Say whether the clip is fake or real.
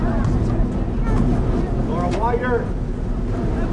real